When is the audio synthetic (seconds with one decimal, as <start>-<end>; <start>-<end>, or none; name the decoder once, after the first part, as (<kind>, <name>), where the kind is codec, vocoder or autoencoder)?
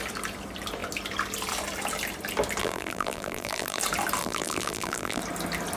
2.6-3.8 (vocoder, BigVGAN v2); 4.2-5.2